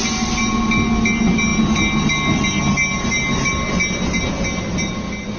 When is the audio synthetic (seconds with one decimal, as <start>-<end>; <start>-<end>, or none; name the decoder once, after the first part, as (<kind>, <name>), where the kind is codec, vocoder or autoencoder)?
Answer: none